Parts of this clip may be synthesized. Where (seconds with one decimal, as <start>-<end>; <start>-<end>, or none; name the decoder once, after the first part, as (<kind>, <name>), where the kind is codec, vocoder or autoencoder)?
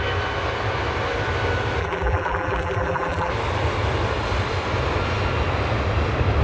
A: 1.8-3.3 (vocoder, BigVGAN v2)